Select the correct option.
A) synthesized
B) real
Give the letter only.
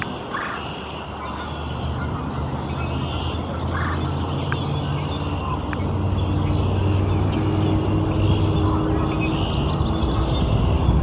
B